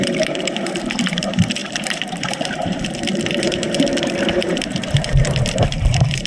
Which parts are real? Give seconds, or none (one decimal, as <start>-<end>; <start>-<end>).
none